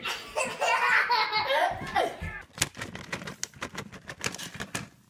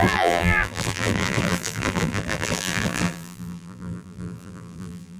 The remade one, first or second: second